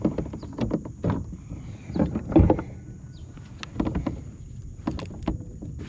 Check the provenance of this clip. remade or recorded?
recorded